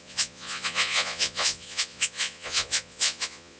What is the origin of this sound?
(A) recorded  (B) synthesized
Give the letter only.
B